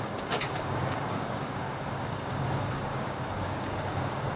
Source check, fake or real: fake